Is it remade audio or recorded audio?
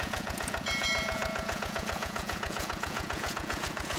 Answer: remade